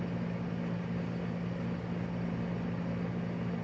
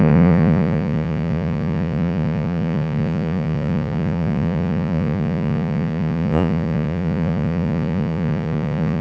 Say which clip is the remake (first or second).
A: second